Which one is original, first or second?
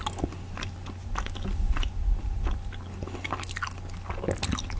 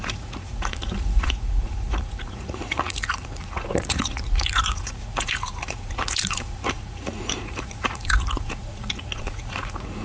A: first